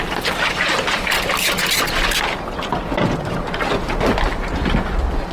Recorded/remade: recorded